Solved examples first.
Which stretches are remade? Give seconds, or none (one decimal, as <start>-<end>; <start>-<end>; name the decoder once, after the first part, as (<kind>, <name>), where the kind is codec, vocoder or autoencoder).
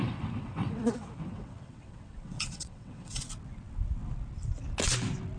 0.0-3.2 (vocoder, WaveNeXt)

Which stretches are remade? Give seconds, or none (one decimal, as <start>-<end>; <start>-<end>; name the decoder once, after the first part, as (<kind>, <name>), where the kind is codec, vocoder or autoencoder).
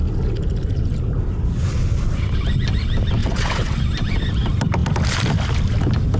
3.2-3.8 (vocoder, WaveNeXt)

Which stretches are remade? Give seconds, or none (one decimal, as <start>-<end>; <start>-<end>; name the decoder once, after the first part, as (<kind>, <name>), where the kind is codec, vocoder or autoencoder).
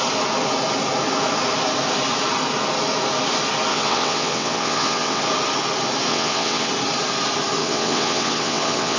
3.7-5.2 (vocoder, WaveNeXt); 6.1-6.7; 7.6-9.0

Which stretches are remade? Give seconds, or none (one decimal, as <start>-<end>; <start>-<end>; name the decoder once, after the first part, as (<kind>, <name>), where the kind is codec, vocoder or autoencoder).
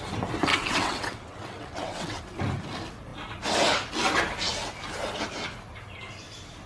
0.5-2.2 (vocoder, WaveNeXt)